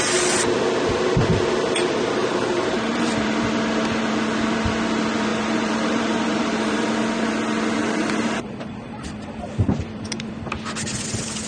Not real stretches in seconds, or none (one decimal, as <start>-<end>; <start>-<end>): 2.2-3.5; 5.3-6.9; 7.8-9.8